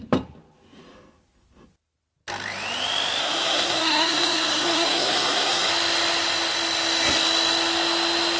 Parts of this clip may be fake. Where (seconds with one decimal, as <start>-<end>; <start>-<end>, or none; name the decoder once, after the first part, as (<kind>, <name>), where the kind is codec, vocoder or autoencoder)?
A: 3.2-5.7 (codec, SNAC)